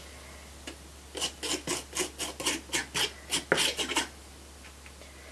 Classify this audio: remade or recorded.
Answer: recorded